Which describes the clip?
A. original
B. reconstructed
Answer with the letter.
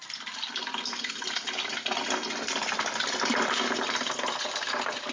A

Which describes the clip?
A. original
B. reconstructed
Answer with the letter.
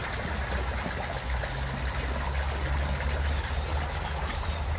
A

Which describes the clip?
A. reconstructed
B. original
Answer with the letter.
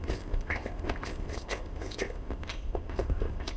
A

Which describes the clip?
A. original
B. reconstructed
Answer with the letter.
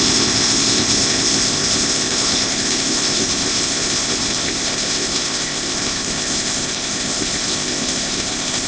B